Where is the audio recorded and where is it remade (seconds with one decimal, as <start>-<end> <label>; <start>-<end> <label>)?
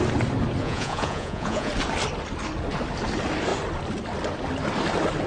0.0-0.6 recorded; 0.6-1.7 remade; 1.7-5.3 recorded